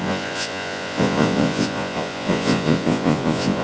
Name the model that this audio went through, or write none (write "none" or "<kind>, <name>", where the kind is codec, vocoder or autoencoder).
vocoder, Vocos